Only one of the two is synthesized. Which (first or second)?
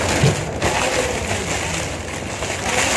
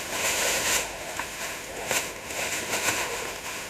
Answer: second